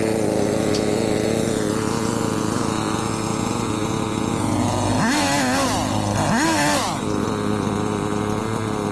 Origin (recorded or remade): recorded